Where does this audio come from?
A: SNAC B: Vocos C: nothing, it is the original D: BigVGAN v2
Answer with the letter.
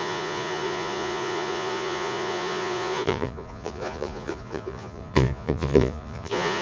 B